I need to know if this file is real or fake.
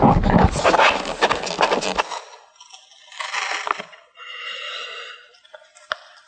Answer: real